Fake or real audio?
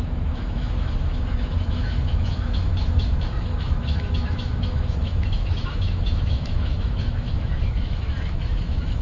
fake